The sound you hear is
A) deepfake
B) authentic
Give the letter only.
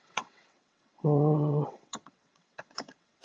A